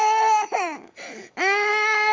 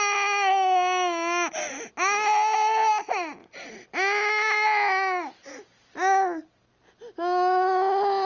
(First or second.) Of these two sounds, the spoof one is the first